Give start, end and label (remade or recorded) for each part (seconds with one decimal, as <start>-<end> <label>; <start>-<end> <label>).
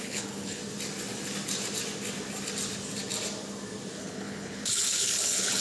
0.0-0.6 remade; 0.6-4.0 recorded; 4.0-5.6 remade